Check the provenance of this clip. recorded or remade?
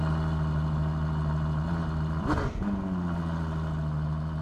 recorded